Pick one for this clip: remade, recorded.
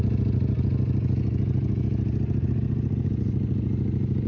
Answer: recorded